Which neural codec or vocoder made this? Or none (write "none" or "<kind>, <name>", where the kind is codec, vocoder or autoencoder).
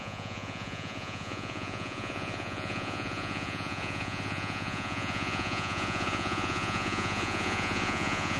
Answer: vocoder, Vocos